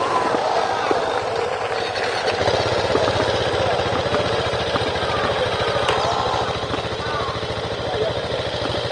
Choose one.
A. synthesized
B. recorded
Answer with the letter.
B